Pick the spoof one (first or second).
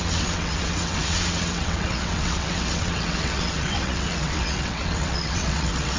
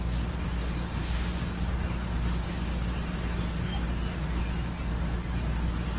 first